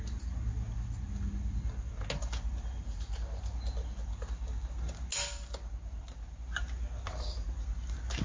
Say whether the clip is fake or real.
real